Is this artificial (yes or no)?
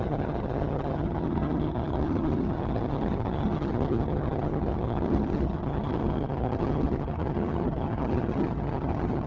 yes